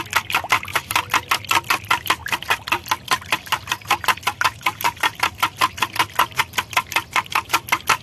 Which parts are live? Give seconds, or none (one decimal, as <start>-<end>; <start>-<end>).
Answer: 0.0-2.2; 4.2-8.0